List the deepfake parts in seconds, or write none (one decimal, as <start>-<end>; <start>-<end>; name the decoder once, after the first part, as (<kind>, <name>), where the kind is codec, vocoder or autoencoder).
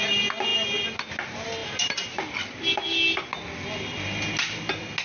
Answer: none